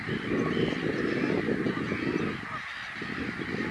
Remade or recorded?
recorded